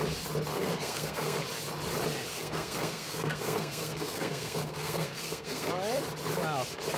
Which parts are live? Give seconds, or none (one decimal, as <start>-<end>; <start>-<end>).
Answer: 0.0-0.5; 1.4-2.3; 5.7-7.0